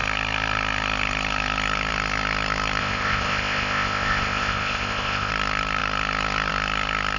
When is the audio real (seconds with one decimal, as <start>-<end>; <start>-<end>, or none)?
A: 0.0-2.8; 5.3-7.2